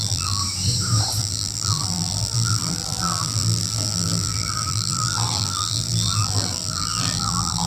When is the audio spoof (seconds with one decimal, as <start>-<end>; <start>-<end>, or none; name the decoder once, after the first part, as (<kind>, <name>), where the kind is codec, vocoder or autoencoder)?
0.0-0.4 (vocoder, BigVGAN v2); 1.2-7.7